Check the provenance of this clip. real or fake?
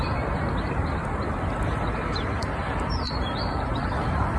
fake